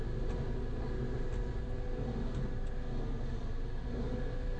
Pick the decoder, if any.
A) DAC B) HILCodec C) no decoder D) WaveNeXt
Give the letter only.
C